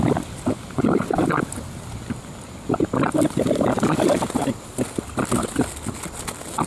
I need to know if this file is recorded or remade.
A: recorded